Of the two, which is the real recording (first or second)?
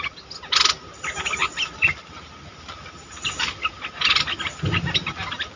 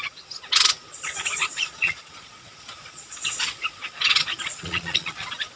first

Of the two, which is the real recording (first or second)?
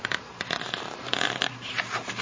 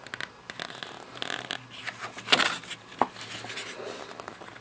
second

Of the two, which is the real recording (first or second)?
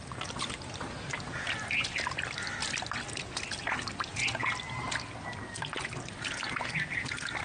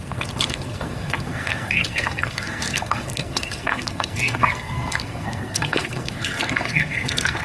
first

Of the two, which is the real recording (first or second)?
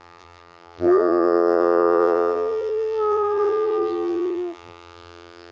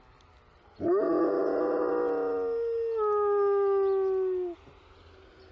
second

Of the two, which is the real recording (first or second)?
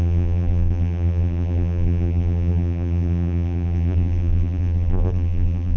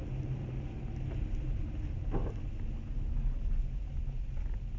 second